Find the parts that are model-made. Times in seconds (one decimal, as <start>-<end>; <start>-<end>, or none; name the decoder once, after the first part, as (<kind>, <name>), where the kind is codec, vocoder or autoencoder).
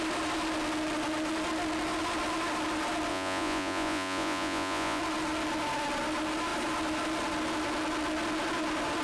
3.1-5.0 (vocoder, Vocos)